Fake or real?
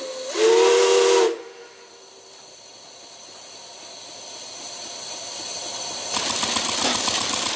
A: real